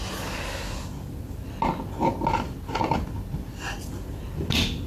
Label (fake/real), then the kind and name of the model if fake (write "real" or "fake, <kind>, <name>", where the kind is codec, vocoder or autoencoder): real